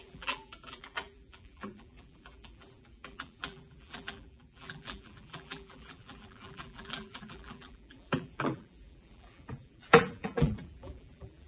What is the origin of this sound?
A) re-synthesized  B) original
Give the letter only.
A